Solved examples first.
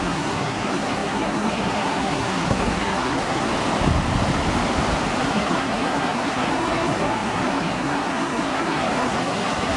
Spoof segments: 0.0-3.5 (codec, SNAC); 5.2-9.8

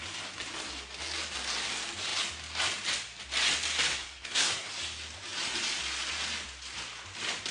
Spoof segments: 3.9-4.7 (codec, SNAC)

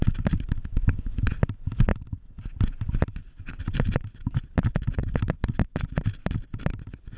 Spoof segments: none

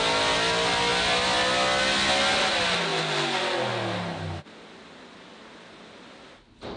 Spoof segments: none

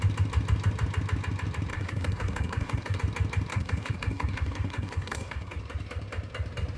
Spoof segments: 1.7-3.0 (codec, SNAC); 3.5-5.6